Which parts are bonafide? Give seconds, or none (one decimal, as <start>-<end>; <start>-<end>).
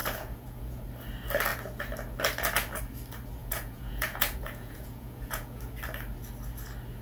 0.8-3.4; 5.6-7.0